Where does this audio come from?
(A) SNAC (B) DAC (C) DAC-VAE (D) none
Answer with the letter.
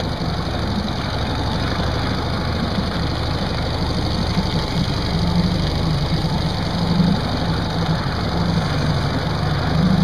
D